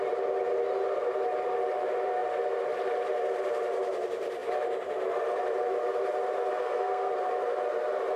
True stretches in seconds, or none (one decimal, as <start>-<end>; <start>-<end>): 0.0-6.6; 7.1-8.2